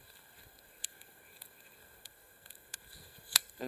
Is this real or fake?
fake